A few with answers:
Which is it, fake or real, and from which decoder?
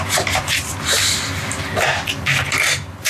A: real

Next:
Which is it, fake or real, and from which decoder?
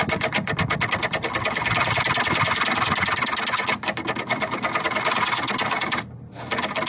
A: real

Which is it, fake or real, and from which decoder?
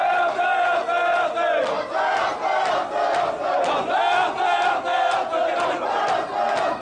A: real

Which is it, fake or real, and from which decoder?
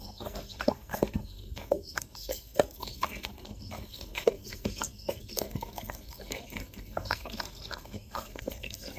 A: fake, codec, SNAC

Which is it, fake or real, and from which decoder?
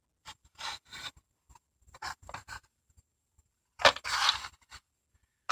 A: real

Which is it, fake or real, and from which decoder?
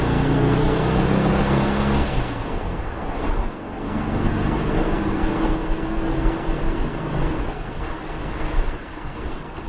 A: fake, codec, SNAC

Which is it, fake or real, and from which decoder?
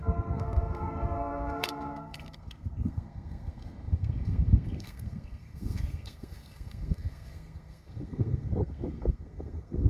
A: fake, codec, SNAC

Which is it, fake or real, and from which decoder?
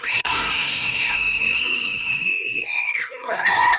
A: fake, codec, SNAC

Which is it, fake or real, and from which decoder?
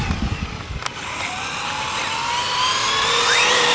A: real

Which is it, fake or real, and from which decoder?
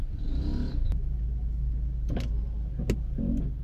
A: real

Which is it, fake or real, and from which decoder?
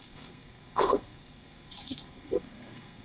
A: fake, codec, SNAC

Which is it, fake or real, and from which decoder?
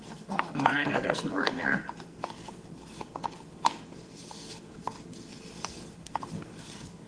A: fake, codec, SNAC